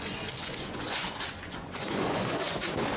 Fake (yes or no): yes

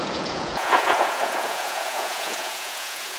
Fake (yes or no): yes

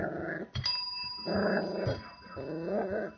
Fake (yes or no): no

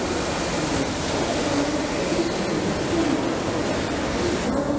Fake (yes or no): no